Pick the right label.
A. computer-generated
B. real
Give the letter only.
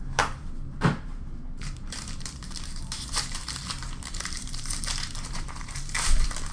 A